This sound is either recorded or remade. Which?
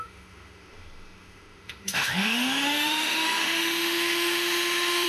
remade